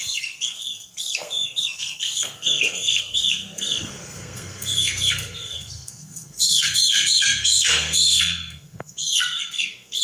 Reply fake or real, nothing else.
fake